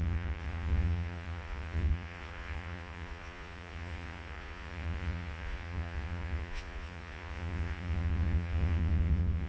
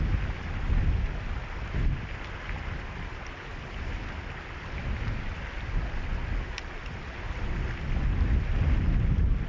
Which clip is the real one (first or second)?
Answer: second